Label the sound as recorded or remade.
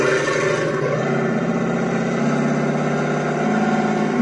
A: recorded